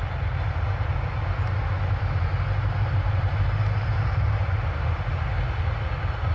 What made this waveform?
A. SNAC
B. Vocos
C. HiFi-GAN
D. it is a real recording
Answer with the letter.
D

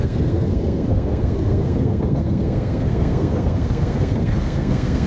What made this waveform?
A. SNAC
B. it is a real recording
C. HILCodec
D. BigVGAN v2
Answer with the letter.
A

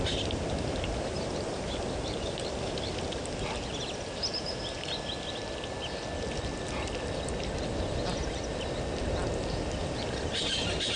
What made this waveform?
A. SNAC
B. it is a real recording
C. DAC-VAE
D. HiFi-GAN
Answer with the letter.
B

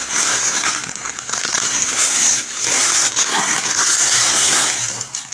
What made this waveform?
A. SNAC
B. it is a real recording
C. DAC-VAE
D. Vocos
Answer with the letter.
A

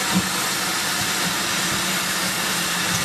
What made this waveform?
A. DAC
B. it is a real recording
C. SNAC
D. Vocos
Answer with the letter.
B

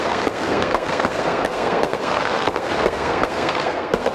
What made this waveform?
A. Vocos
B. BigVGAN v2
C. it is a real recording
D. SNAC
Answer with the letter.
D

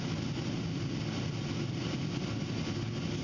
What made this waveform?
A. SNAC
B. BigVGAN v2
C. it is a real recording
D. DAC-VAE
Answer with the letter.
C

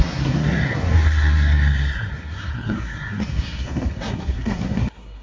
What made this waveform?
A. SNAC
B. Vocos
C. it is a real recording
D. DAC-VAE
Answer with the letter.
A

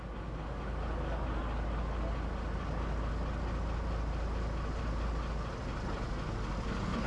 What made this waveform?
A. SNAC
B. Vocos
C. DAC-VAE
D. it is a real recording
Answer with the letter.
D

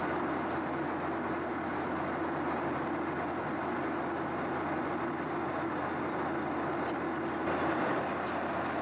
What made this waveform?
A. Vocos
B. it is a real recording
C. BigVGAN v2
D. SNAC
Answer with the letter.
B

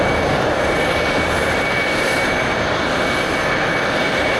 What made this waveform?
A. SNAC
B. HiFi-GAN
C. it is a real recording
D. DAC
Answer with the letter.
C